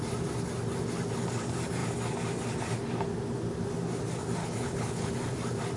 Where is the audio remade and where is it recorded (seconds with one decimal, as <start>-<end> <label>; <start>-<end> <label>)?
0.0-4.4 recorded; 4.4-5.1 remade; 5.1-5.8 recorded